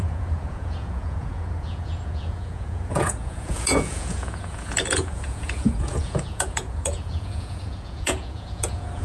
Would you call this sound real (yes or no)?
no